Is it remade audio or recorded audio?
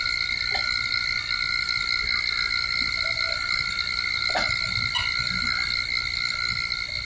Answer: recorded